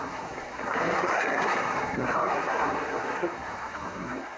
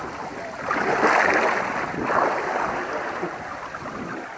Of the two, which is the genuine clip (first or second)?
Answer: second